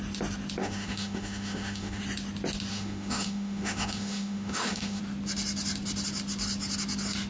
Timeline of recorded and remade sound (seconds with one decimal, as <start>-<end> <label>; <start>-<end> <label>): 0.0-0.6 recorded; 0.6-2.0 remade; 2.0-2.7 recorded; 2.7-5.0 remade; 5.0-7.3 recorded